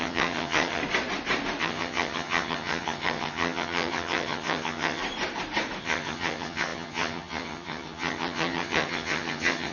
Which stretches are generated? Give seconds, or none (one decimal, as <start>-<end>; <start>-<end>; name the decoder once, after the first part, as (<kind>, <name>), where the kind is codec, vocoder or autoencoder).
0.0-0.8 (vocoder, HiFi-GAN); 1.6-5.0; 5.8-9.7